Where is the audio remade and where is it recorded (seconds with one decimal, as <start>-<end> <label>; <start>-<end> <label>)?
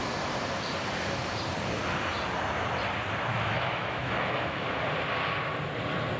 0.0-3.3 recorded; 3.3-4.7 remade; 4.7-6.2 recorded